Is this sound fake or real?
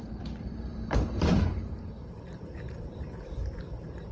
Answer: fake